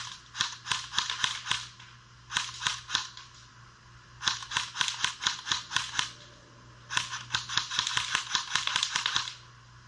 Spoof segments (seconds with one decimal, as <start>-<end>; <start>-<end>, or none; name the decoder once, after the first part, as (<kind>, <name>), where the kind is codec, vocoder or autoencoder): none